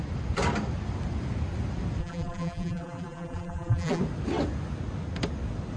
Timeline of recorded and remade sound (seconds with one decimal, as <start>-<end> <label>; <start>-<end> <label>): 0.0-2.0 recorded; 2.0-4.0 remade; 4.0-5.8 recorded